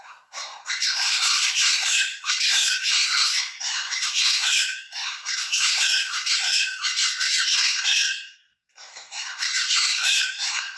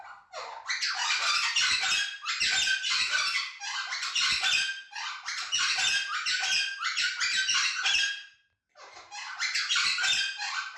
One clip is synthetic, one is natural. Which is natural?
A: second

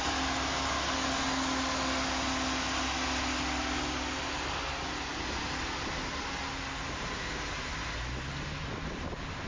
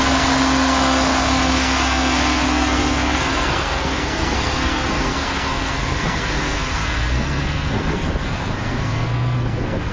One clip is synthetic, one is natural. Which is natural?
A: first